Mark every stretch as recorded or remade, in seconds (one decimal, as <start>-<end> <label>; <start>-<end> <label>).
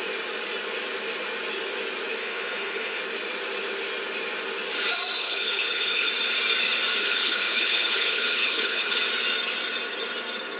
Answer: 0.0-2.2 recorded; 2.2-3.0 remade; 3.0-5.2 recorded; 5.2-6.1 remade; 6.1-7.0 recorded; 7.0-9.0 remade; 9.0-10.6 recorded